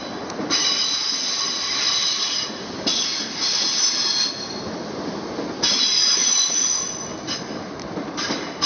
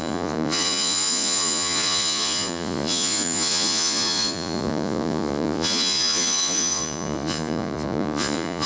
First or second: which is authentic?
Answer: first